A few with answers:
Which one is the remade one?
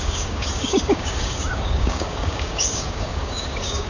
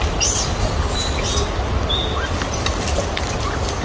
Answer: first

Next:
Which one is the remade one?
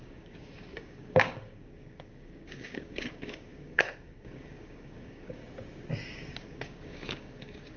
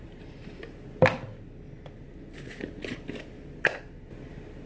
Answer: first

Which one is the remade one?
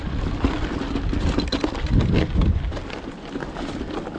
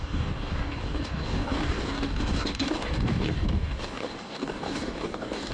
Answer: second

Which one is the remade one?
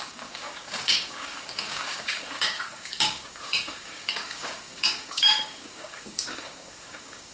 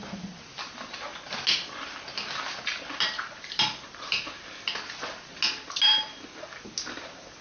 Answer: first